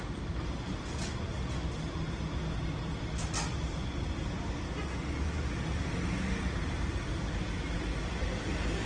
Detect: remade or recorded recorded